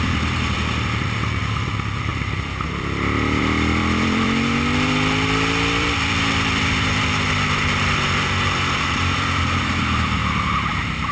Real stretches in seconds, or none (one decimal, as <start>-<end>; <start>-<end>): 10.2-10.7